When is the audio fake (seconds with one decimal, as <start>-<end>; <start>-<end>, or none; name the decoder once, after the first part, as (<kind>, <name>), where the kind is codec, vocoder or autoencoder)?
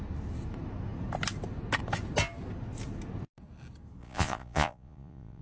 4.0-5.4 (vocoder, Vocos)